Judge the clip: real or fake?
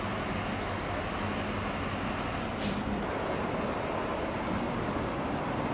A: real